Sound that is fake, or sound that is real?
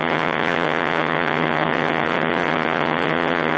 fake